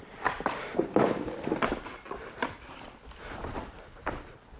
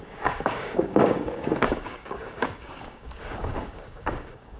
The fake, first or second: second